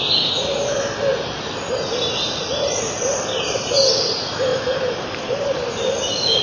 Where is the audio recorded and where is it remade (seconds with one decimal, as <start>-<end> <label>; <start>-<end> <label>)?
0.0-6.4 recorded